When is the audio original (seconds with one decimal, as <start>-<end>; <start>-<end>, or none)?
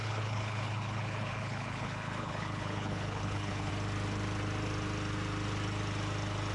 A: 3.7-6.5